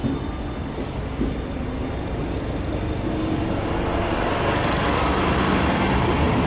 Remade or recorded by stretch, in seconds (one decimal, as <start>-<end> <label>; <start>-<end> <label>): 0.0-6.5 recorded